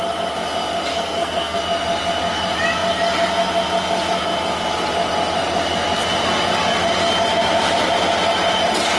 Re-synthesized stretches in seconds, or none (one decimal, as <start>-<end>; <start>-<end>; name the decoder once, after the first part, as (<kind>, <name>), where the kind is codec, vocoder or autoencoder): 0.9-1.6 (codec, SNAC)